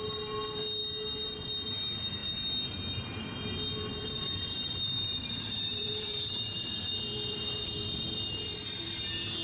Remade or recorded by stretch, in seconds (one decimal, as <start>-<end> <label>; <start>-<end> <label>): 0.0-3.9 recorded; 3.9-8.8 remade; 8.8-9.4 recorded